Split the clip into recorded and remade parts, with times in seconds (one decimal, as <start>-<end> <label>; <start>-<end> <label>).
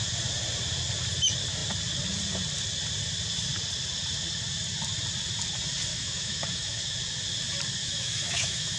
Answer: 0.0-5.9 recorded; 5.9-6.8 remade; 6.8-7.8 recorded; 7.8-8.8 remade